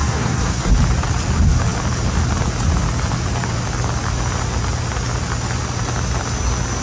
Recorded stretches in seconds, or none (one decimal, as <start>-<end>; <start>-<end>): 0.7-6.8